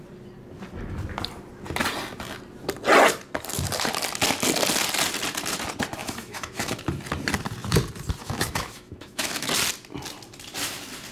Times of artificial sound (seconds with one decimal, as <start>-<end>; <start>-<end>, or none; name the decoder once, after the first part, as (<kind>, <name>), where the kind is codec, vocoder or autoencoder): 6.0-6.8 (autoencoder, DAC-VAE); 8.2-9.5